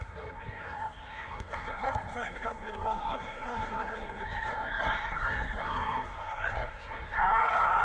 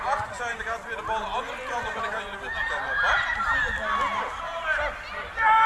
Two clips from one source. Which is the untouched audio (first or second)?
second